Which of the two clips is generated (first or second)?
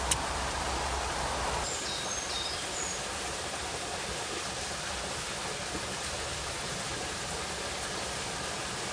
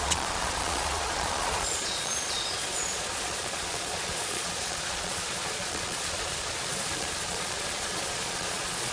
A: second